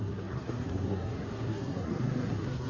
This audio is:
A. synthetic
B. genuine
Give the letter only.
A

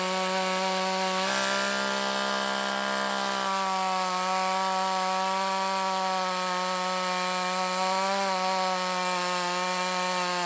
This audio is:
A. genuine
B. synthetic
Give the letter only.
A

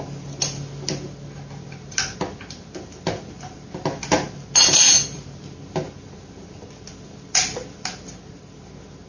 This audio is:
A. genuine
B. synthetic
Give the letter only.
A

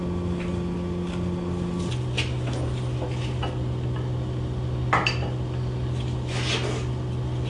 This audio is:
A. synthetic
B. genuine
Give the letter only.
B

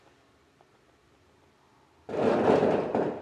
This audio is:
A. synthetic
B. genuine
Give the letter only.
B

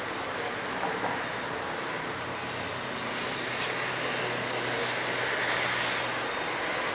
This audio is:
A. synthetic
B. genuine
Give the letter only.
B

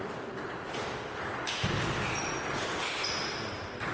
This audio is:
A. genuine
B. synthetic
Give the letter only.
A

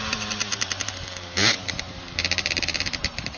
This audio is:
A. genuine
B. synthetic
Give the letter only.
B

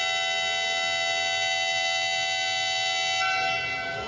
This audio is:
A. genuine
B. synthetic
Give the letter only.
A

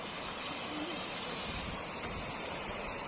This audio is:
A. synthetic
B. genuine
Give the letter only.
A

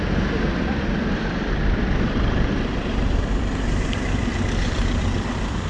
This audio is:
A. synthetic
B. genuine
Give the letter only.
A